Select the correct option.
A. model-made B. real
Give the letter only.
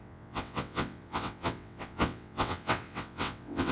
A